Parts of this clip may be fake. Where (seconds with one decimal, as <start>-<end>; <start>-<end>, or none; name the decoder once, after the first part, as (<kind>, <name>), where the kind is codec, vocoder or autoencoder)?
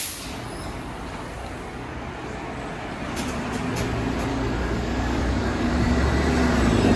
4.3-6.0 (codec, DAC)